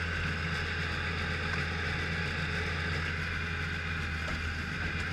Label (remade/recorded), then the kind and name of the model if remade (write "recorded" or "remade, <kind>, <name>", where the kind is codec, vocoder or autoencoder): recorded